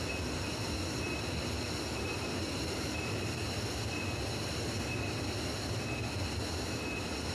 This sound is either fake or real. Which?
real